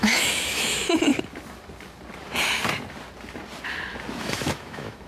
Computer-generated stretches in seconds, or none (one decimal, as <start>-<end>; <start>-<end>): 0.0-1.1; 4.2-5.1